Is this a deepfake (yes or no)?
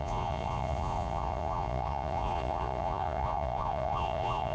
yes